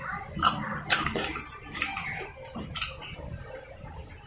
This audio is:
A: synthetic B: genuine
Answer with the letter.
A